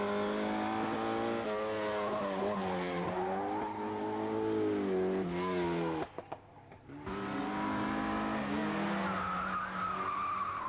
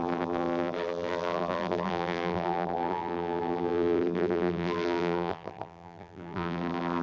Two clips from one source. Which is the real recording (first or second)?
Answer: first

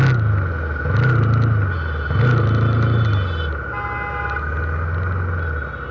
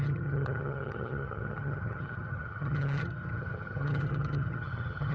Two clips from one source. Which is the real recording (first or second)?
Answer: first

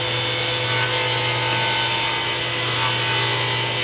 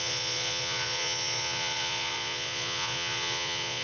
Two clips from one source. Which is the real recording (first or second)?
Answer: first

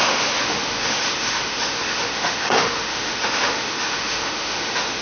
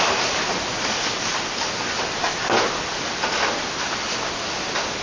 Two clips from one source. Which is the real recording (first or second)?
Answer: second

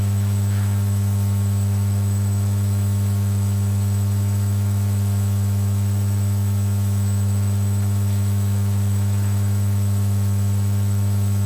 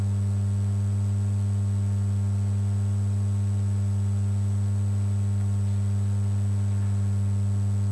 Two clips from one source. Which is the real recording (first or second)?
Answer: second